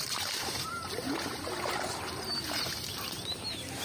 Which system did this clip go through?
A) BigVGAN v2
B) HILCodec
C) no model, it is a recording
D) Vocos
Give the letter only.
A